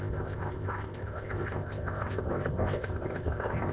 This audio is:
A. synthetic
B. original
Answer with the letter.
A